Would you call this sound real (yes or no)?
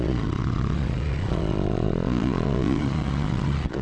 no